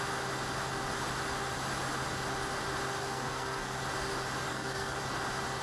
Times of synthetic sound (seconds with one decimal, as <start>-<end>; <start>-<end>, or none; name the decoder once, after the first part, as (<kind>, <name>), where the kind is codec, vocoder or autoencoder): 3.0-3.8 (codec, SNAC); 4.5-5.0